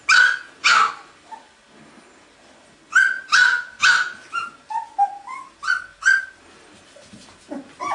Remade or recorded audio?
recorded